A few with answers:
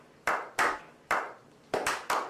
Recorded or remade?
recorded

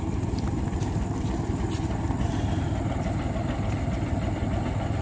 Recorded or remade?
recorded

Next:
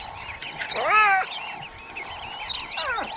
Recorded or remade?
recorded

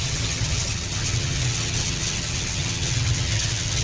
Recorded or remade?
remade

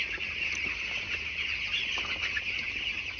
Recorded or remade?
recorded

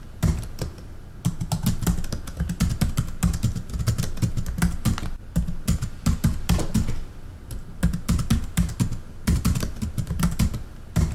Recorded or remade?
recorded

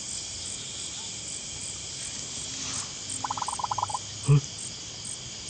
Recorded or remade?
recorded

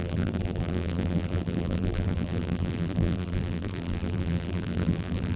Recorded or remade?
remade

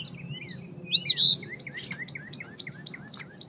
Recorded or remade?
recorded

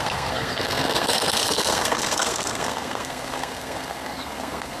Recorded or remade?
remade